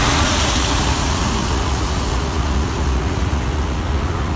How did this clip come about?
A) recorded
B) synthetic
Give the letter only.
B